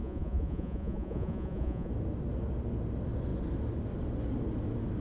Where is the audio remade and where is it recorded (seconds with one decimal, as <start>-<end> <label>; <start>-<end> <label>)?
0.0-1.9 remade; 1.9-5.0 recorded